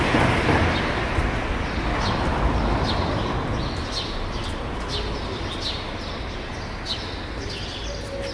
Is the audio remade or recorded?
recorded